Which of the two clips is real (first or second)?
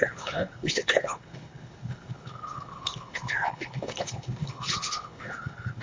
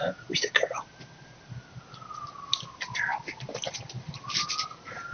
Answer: second